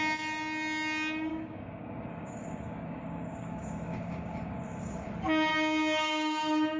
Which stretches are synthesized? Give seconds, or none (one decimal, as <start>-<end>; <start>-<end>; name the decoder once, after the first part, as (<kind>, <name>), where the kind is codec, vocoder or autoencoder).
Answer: 1.3-5.1 (codec, DAC); 5.5-6.8